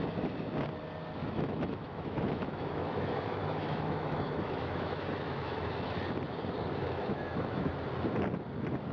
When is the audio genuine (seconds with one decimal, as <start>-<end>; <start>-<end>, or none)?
0.0-1.2; 6.0-6.8; 7.7-8.9